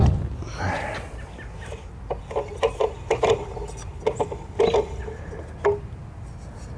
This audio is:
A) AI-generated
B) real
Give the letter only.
B